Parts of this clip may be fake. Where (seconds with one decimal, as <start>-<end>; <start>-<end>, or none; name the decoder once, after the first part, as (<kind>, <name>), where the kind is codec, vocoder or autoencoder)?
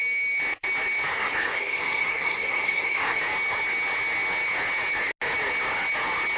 1.1-3.2 (codec, SNAC)